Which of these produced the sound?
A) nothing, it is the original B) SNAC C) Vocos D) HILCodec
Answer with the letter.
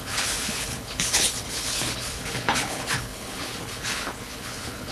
D